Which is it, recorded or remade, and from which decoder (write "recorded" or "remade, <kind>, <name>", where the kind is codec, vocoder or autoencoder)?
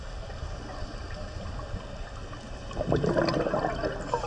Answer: recorded